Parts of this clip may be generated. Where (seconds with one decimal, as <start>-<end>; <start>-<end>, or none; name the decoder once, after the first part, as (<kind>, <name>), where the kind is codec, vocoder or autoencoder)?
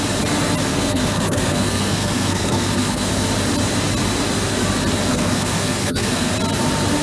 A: 0.7-3.1 (codec, SNAC); 5.1-6.3